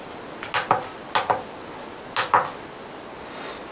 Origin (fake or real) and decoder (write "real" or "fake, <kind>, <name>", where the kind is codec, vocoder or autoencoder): real